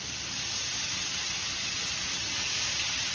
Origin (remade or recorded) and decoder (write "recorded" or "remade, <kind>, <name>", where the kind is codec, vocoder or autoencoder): recorded